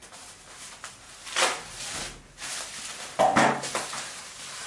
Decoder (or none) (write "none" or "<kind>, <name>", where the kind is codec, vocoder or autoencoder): none